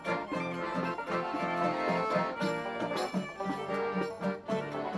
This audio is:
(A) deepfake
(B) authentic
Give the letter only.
B